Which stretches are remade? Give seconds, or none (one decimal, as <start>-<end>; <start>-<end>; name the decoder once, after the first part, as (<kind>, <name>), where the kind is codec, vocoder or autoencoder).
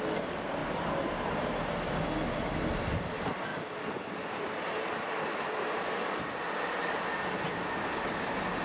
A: none